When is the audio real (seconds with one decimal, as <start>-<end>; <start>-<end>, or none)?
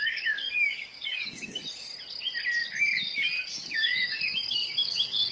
1.6-2.8